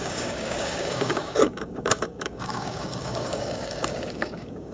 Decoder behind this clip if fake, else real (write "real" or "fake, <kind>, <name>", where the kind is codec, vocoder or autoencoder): fake, codec, DAC